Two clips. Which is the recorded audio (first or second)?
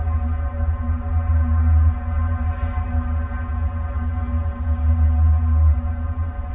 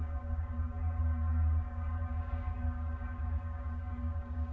first